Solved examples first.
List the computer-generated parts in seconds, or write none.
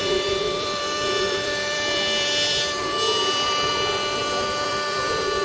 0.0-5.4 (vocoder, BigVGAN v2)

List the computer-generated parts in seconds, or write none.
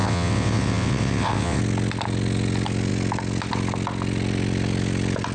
0.0-1.6 (vocoder, WaveNeXt)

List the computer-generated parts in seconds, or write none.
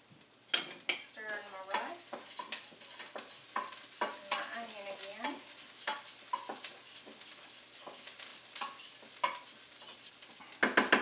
none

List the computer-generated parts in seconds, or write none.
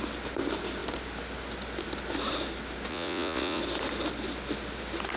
2.9-3.6 (vocoder, Vocos)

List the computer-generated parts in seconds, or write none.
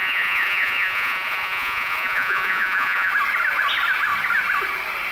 0.0-3.1 (vocoder, Vocos)